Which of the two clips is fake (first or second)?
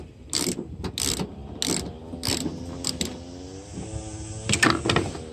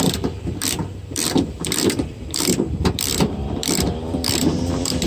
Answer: second